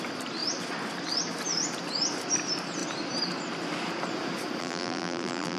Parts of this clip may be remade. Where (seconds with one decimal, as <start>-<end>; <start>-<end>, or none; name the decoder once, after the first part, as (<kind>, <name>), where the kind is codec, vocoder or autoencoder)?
4.6-5.6 (vocoder, BigVGAN v2)